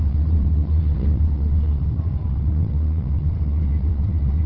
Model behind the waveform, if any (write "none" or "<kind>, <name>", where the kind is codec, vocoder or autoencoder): vocoder, WaveNeXt